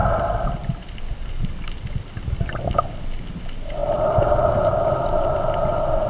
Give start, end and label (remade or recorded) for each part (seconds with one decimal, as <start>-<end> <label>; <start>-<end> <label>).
0.0-1.0 remade; 1.0-3.8 recorded; 3.8-5.3 remade; 5.3-6.1 recorded